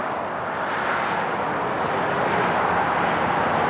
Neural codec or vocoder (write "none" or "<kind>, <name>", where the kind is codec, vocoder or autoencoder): none